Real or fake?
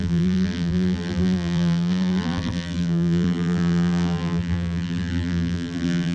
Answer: fake